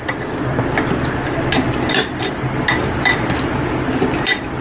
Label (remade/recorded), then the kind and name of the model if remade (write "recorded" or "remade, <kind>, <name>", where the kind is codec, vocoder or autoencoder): recorded